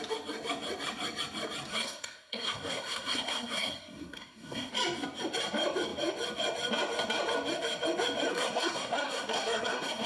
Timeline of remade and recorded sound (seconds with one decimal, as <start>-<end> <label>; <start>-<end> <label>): 0.0-1.7 recorded; 1.7-4.7 remade; 4.7-8.3 recorded; 8.3-10.1 remade